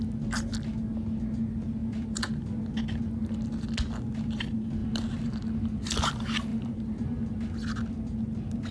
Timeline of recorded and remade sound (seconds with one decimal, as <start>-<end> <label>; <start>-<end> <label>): 0.0-1.8 recorded; 1.8-2.4 remade; 2.4-4.8 recorded; 4.8-5.5 remade; 5.5-6.5 recorded; 6.5-7.8 remade; 7.8-8.7 recorded